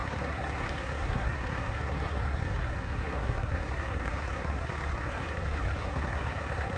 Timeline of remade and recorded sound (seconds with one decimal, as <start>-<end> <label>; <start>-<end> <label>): 0.0-6.8 remade